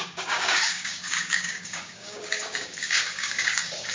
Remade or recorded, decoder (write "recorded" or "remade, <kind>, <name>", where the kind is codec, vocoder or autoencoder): remade, codec, DAC